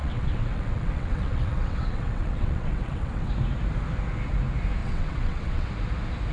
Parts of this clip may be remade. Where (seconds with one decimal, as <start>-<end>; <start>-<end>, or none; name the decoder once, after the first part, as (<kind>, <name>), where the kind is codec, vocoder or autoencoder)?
0.0-3.3 (vocoder, WaveNeXt); 4.8-5.7